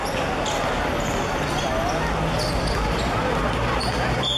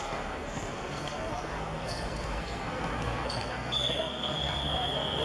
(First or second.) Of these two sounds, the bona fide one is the first